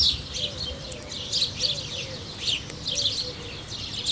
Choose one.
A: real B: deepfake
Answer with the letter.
A